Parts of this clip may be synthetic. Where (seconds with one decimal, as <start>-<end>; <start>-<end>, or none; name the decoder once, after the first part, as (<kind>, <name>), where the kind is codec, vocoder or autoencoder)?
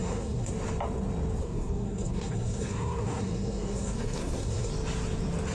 0.0-0.5 (codec, SNAC); 1.4-4.7